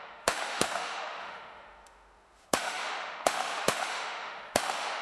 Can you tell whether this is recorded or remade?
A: remade